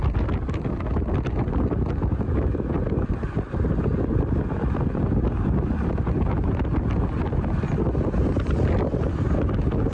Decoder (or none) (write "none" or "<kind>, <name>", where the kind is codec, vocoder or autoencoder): none